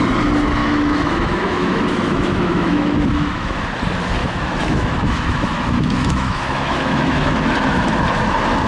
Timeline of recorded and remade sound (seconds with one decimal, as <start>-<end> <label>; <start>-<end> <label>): 0.0-0.6 recorded; 0.6-3.6 remade; 3.6-4.2 recorded; 4.2-7.4 remade; 7.4-8.7 recorded